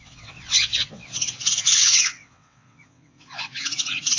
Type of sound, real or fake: fake